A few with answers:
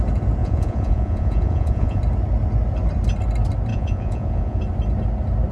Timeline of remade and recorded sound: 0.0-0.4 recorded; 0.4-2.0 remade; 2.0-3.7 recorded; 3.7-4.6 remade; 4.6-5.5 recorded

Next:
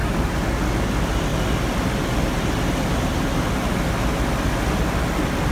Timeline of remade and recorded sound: 0.0-5.5 recorded